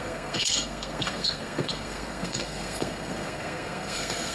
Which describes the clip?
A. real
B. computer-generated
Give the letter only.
B